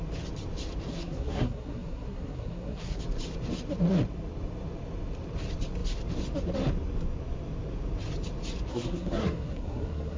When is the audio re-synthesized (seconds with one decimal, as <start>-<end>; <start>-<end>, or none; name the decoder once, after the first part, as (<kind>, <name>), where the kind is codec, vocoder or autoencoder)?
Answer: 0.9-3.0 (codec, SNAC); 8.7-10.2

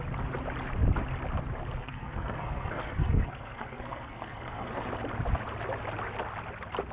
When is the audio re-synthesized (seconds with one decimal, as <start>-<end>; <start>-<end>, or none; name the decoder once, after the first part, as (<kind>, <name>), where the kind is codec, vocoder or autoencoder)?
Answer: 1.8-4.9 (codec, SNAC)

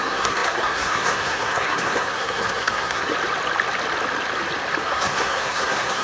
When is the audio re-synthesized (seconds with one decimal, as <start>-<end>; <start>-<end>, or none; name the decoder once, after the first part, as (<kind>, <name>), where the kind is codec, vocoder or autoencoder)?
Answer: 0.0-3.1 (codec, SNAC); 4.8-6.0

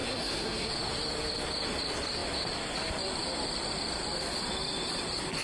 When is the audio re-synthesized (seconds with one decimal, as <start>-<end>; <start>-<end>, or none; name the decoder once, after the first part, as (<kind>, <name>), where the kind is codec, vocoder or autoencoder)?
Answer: 0.0-0.7 (codec, SNAC)